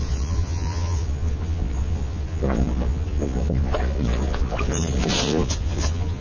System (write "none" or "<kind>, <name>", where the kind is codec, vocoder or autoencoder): vocoder, Vocos